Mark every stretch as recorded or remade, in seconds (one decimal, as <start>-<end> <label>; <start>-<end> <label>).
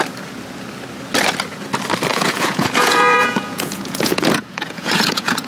0.0-2.1 recorded; 2.1-5.5 remade